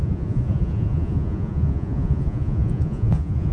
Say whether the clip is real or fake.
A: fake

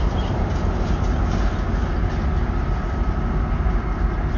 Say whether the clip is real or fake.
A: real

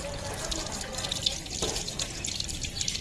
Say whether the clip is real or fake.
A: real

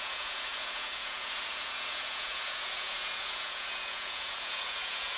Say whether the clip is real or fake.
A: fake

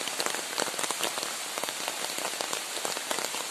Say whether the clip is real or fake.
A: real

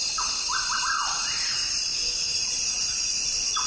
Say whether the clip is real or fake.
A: real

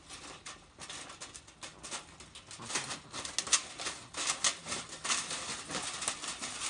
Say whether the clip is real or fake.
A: real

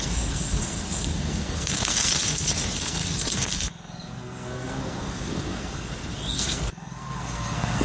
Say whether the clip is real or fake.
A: fake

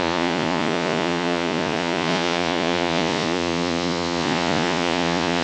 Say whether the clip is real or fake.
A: fake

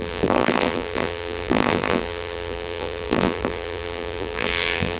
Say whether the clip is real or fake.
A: fake